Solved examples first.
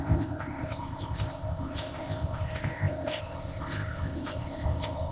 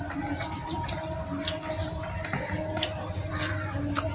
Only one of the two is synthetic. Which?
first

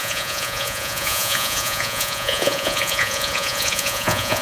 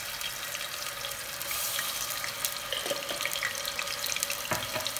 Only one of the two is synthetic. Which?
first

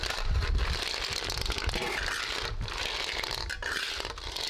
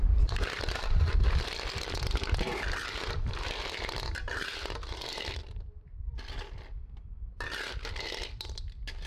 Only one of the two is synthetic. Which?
second